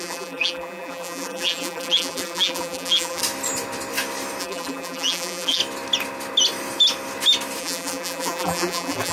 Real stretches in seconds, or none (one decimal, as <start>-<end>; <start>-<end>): 3.2-4.4; 5.6-7.6